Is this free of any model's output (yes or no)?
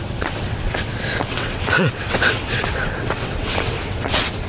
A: no